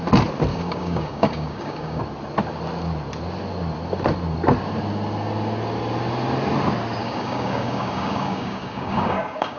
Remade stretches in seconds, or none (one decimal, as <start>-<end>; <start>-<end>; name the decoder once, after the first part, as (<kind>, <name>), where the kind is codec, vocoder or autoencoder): 0.5-2.0 (codec, DAC); 7.0-9.6